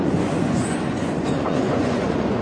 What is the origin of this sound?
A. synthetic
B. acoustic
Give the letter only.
A